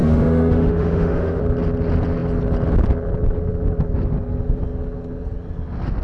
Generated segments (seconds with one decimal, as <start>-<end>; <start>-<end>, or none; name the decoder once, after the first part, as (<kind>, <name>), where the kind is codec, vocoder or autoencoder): 0.0-1.4 (autoencoder, DAC-VAE)